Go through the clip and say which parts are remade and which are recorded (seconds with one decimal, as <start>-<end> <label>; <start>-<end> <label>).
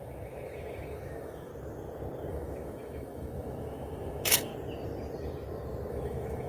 0.0-1.5 remade; 1.5-2.3 recorded; 2.3-4.5 remade; 4.5-5.9 recorded; 5.9-6.5 remade